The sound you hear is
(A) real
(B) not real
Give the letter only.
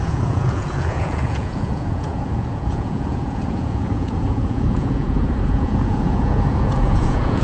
B